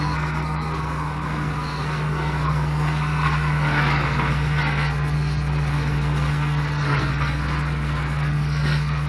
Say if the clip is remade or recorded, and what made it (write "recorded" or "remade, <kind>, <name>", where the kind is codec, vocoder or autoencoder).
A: remade, codec, SNAC